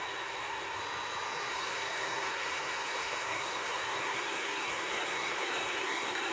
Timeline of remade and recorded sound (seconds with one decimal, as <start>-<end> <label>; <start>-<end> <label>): 0.0-0.8 remade; 0.8-1.5 recorded; 1.5-6.3 remade